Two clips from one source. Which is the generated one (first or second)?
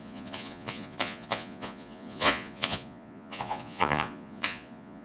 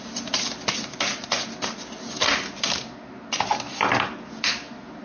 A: first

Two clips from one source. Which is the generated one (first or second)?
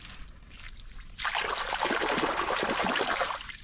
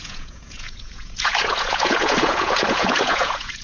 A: second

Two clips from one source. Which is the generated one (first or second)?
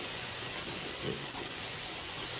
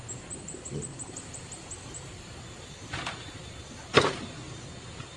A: first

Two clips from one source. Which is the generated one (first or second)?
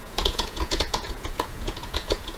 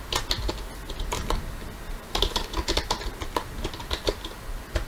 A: first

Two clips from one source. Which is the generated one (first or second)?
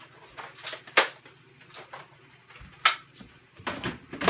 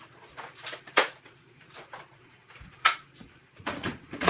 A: second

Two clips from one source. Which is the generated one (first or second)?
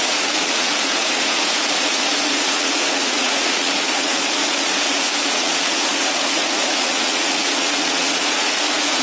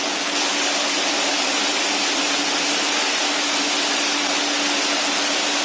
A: first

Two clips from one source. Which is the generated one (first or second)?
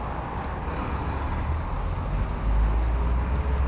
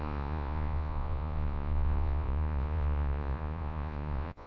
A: second